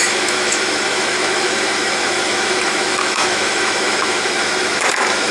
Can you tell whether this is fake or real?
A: fake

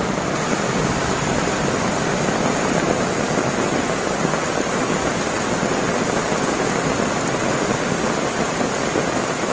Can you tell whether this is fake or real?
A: real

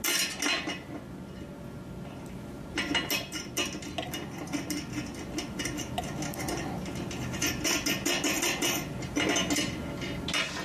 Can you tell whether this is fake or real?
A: real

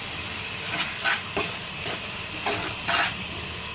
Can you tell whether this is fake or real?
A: real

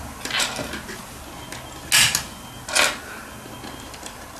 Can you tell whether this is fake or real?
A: real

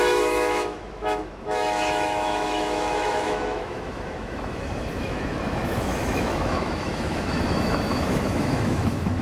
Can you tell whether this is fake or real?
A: fake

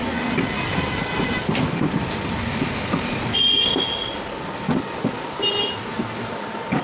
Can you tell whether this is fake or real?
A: real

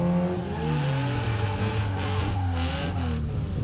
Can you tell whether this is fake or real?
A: real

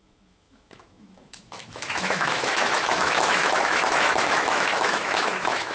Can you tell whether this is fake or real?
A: fake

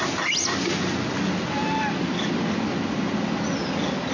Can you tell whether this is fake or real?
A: real